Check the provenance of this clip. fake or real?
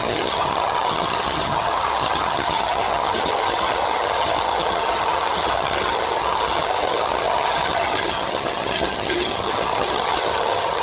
fake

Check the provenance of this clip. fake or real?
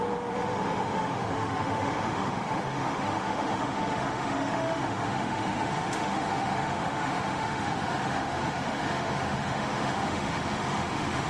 fake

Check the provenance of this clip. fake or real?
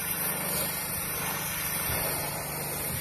real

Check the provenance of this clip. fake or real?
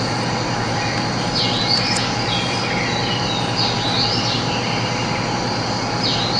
real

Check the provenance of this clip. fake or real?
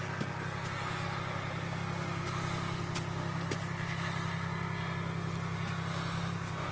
real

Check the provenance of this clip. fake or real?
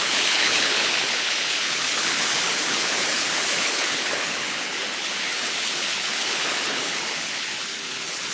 fake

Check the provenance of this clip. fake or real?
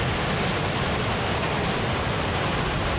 real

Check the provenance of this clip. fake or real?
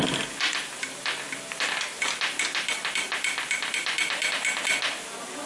real